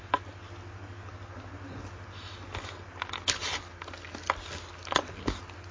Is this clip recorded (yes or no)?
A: yes